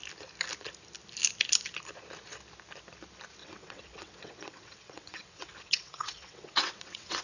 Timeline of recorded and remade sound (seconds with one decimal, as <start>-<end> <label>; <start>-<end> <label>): 0.0-3.4 recorded; 3.4-7.2 remade